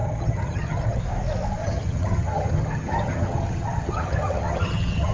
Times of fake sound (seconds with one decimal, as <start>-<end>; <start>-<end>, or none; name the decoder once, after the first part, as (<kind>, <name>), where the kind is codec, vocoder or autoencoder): 0.0-1.0 (vocoder, HiFi-GAN); 1.6-5.1